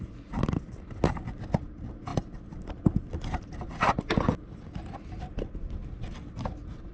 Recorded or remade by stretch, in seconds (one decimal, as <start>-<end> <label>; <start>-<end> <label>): 0.0-6.9 recorded